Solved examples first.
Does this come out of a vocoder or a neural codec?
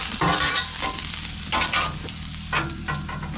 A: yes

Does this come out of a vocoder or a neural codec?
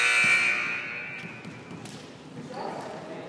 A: no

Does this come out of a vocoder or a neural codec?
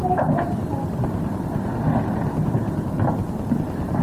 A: yes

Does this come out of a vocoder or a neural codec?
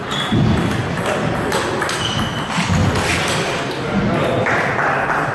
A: no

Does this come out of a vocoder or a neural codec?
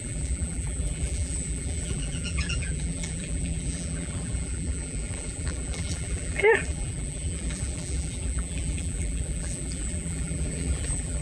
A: yes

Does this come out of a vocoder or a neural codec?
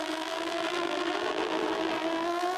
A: yes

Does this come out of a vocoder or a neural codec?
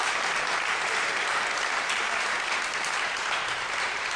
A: yes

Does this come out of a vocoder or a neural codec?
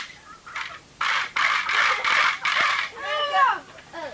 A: yes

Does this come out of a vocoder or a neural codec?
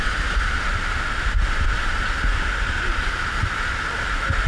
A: no